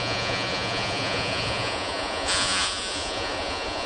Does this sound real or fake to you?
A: fake